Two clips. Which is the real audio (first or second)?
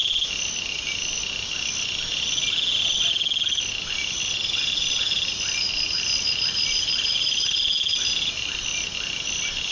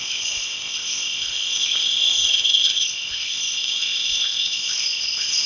first